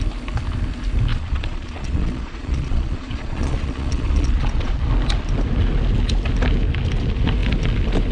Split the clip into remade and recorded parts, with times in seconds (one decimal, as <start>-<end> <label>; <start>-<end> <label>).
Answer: 0.0-1.1 recorded; 1.1-4.9 remade; 4.9-8.1 recorded